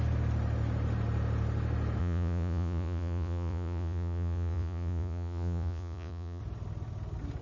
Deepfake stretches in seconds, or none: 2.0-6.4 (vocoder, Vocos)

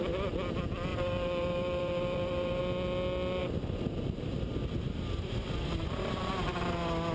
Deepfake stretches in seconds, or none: 0.9-2.6 (vocoder, BigVGAN v2); 3.4-5.3